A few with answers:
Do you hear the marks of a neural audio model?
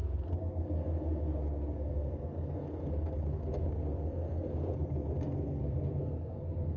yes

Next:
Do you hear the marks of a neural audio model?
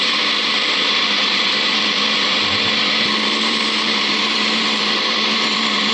yes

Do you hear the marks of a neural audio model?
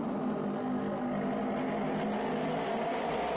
no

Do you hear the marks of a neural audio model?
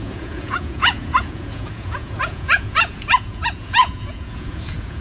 yes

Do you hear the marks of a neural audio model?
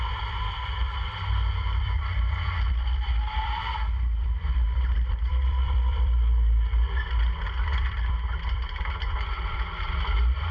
yes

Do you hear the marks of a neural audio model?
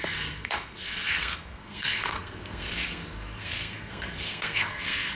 yes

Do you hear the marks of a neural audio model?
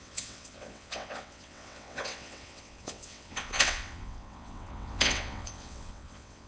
yes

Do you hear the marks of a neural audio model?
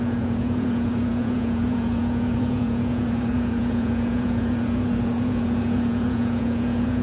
yes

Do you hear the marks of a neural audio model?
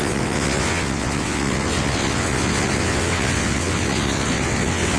yes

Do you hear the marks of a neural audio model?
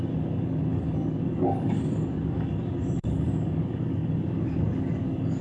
yes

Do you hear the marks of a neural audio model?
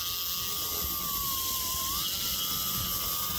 no